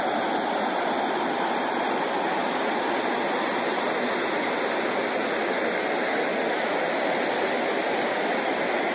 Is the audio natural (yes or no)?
yes